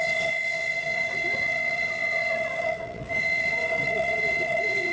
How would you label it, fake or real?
fake